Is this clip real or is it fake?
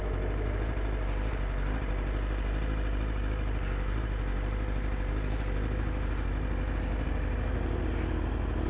real